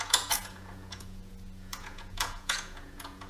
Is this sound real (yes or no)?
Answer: no